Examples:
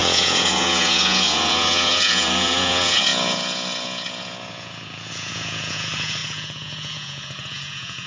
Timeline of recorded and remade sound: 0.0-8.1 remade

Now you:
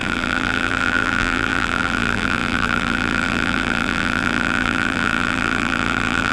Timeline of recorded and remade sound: 0.0-6.3 remade